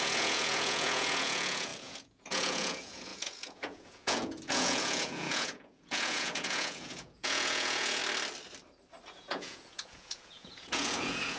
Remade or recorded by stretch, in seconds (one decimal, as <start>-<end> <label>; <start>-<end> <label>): 0.0-8.0 remade; 8.0-9.1 recorded; 9.1-11.4 remade